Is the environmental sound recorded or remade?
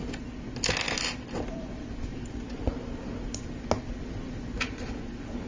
recorded